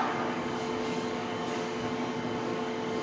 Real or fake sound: fake